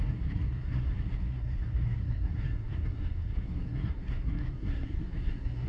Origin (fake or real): fake